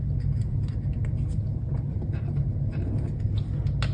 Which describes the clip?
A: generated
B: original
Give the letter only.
B